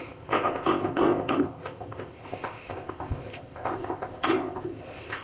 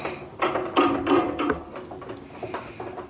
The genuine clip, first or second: second